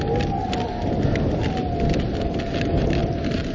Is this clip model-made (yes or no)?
no